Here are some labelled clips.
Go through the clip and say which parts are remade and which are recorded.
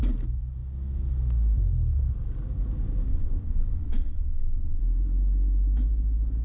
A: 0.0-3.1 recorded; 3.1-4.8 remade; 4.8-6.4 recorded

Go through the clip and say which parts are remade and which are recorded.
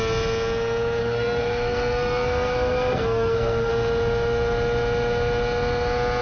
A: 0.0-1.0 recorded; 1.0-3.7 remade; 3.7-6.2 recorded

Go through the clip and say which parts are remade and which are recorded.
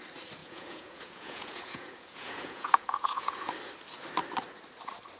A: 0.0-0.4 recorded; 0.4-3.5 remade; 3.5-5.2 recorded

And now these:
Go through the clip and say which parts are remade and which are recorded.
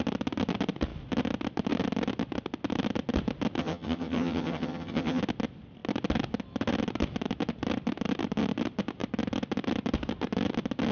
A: 0.0-3.6 recorded; 3.6-5.2 remade; 5.2-10.9 recorded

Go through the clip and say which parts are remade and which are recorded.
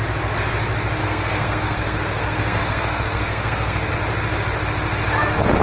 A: 0.0-1.0 recorded; 1.0-3.9 remade; 3.9-5.6 recorded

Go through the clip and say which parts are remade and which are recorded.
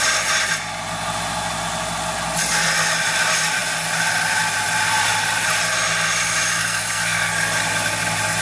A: 0.0-6.6 recorded; 6.6-7.3 remade; 7.3-8.4 recorded